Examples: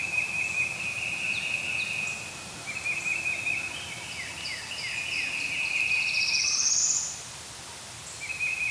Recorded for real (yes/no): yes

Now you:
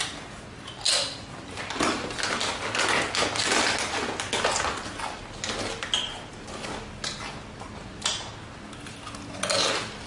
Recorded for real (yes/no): yes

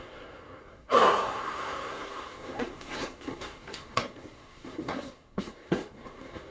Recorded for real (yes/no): no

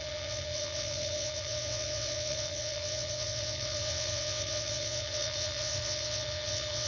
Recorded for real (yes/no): no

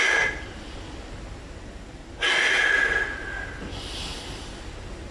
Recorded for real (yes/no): yes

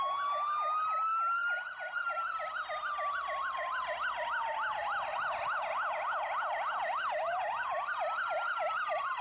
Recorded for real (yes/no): yes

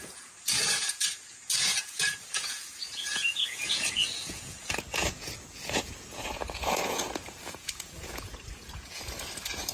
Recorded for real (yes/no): no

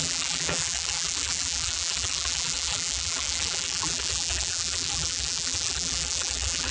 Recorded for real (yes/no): no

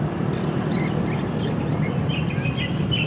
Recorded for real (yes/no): yes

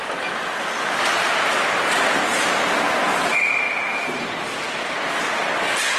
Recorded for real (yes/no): yes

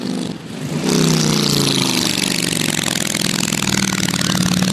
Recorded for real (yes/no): yes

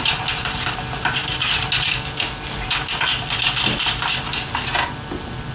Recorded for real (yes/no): yes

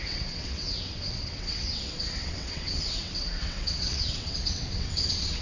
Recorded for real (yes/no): no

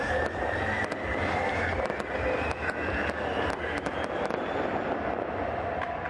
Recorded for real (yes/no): yes